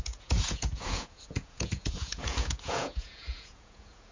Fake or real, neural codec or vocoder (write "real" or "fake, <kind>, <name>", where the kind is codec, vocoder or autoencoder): fake, vocoder, Vocos